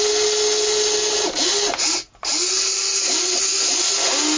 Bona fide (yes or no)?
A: yes